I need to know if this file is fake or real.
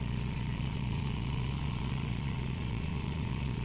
fake